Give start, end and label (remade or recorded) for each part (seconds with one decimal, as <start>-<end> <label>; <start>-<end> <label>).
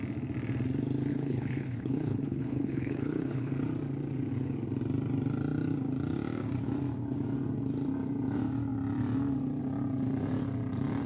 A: 0.0-1.1 recorded; 1.1-3.5 remade; 3.5-11.1 recorded